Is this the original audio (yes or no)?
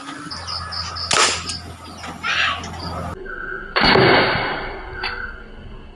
yes